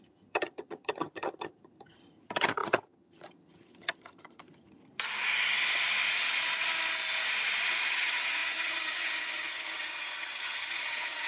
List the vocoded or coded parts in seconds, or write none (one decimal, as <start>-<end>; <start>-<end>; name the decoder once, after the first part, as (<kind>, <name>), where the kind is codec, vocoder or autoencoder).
0.0-4.8 (vocoder, HiFi-GAN); 7.9-11.3